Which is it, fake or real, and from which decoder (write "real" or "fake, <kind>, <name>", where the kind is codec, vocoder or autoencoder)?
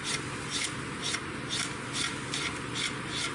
real